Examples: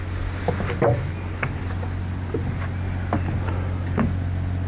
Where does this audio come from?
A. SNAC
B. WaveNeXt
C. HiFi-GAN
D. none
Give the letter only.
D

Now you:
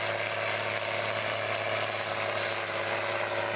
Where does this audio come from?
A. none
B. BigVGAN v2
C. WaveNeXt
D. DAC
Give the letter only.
A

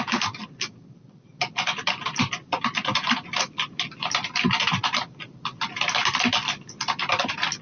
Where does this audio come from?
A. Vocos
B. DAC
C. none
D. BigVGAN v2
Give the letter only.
C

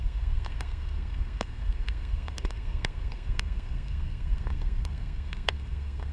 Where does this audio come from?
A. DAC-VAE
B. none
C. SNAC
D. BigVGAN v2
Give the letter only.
C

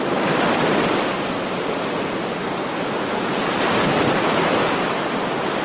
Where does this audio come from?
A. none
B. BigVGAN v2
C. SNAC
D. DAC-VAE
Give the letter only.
B